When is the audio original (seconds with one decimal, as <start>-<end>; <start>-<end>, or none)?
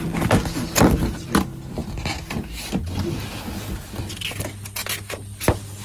0.0-5.8